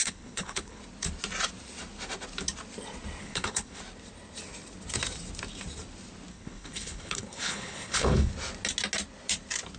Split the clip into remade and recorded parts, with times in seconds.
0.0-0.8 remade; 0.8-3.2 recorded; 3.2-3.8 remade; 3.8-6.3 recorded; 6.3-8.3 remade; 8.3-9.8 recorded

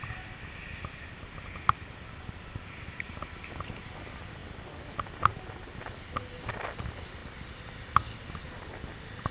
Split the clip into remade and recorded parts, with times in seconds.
0.0-9.3 recorded

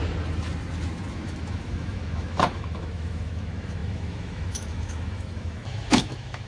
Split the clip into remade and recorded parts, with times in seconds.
0.0-1.1 recorded; 1.1-6.5 remade